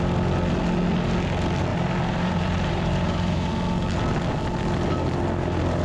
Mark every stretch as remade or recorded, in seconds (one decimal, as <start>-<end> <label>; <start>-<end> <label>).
0.0-1.7 recorded; 1.7-3.5 remade; 3.5-5.8 recorded